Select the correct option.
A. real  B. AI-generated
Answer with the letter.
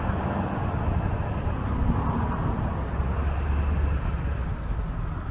A